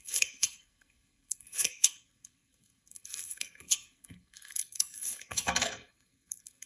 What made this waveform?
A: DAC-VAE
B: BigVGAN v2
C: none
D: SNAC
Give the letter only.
D